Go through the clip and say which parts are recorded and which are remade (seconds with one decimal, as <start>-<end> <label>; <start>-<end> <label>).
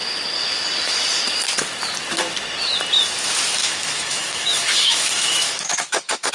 0.0-3.6 recorded; 3.6-6.3 remade